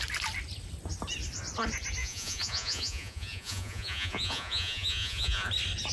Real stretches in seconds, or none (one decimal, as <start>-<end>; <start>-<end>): 0.0-2.0; 5.5-5.9